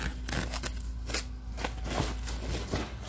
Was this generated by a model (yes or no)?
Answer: no